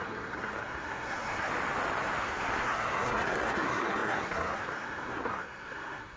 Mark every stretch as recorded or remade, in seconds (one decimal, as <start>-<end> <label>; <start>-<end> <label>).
0.0-1.5 remade; 1.5-2.2 recorded; 2.2-6.2 remade

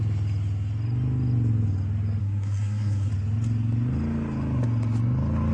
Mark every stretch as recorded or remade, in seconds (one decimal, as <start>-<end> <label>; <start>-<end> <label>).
0.0-2.2 recorded; 2.2-3.1 remade; 3.1-5.5 recorded

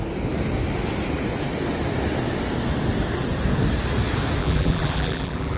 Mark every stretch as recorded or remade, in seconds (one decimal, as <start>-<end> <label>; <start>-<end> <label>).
0.0-4.4 recorded; 4.4-5.6 remade